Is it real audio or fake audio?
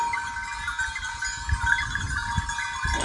real